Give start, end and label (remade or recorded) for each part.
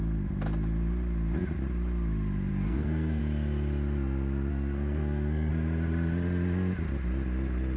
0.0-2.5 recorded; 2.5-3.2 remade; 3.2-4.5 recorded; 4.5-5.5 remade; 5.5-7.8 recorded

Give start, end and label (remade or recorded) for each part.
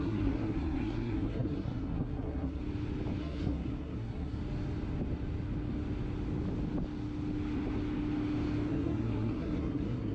0.0-2.6 remade; 2.6-3.2 recorded; 3.2-4.4 remade; 4.4-8.7 recorded; 8.7-10.1 remade